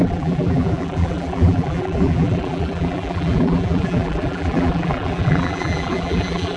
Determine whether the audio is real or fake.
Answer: fake